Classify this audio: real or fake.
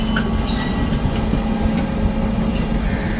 real